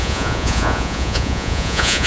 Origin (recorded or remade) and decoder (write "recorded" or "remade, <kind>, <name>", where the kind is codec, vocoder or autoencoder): remade, vocoder, Vocos